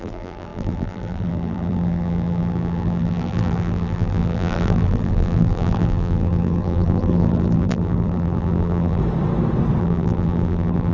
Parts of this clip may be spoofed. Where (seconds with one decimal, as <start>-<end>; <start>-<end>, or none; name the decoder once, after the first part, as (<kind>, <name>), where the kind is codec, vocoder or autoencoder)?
0.0-9.0 (vocoder, BigVGAN v2); 9.8-10.9